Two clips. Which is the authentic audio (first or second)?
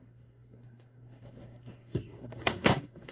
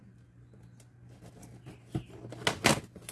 second